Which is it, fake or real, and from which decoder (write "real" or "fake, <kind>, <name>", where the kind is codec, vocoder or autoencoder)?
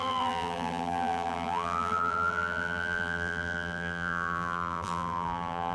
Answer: fake, vocoder, BigVGAN v2